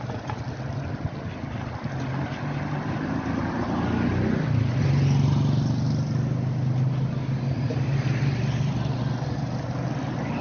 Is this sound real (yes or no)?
yes